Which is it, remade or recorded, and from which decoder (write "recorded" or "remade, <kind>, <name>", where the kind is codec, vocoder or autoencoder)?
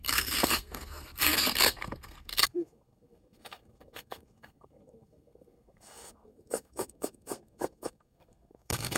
remade, codec, SNAC